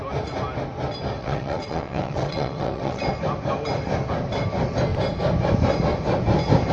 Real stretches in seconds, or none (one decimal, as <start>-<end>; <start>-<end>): 0.0-1.2; 3.0-6.7